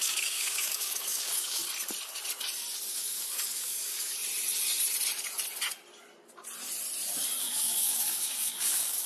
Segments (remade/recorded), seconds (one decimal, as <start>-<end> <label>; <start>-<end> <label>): 0.0-1.6 remade; 1.6-2.9 recorded; 2.9-4.2 remade; 4.2-7.4 recorded; 7.4-9.1 remade

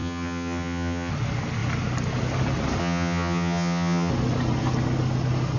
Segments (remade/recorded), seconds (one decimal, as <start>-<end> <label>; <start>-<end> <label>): 0.0-1.1 remade; 1.1-2.8 recorded; 2.8-4.1 remade; 4.1-5.6 recorded

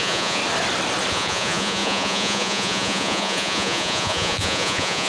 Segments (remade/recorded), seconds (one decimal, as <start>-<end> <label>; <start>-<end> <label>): 0.0-0.4 remade; 0.4-1.1 recorded; 1.1-5.1 remade